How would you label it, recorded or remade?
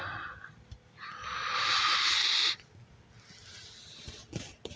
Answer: recorded